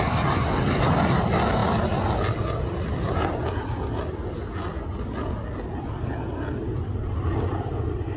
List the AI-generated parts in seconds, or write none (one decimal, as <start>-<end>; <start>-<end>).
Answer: none